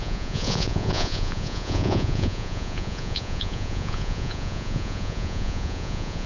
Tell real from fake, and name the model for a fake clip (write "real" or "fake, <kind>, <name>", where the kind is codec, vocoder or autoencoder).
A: fake, vocoder, Vocos